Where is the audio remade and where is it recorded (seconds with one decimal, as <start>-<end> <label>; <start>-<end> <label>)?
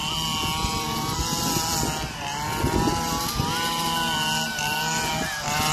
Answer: 0.0-5.7 recorded